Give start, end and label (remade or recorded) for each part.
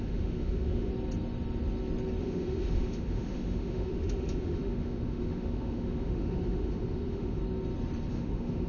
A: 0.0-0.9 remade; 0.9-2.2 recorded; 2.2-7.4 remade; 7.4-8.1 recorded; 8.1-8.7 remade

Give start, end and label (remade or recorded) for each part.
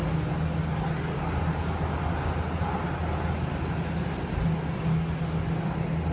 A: 0.0-6.1 recorded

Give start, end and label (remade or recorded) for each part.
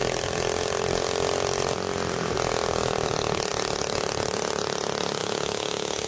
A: 0.0-5.2 recorded; 5.2-6.1 remade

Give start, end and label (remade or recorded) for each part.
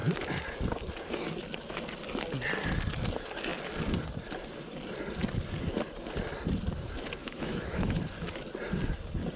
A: 0.0-7.2 recorded; 7.2-8.0 remade; 8.0-9.4 recorded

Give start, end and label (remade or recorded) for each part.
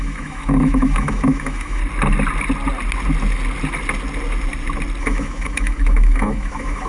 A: 0.0-1.8 remade; 1.8-5.0 recorded; 5.0-6.9 remade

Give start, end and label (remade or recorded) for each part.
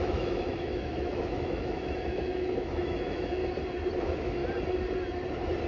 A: 0.0-3.4 remade; 3.4-4.0 recorded; 4.0-4.4 remade; 4.4-5.7 recorded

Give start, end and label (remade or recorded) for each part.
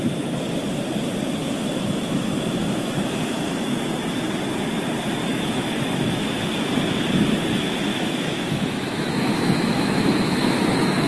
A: 0.0-1.4 recorded; 1.4-3.9 remade; 3.9-5.2 recorded; 5.2-6.3 remade; 6.3-7.9 recorded; 7.9-11.1 remade